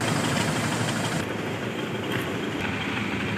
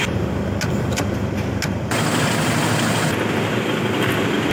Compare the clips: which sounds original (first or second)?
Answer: second